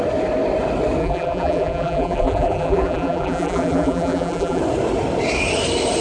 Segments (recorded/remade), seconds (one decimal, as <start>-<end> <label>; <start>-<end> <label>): 0.0-1.0 recorded; 1.0-4.6 remade; 4.6-6.0 recorded